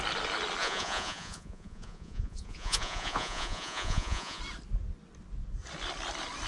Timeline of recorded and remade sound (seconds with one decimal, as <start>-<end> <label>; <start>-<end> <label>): 0.0-0.6 recorded; 0.6-4.4 remade; 4.4-6.5 recorded